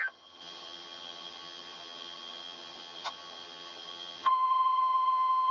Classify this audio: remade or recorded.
remade